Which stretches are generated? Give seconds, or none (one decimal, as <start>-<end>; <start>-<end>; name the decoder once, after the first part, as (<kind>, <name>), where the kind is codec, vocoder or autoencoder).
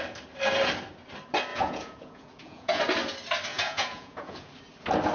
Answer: 1.5-2.8 (vocoder, Vocos); 3.5-4.5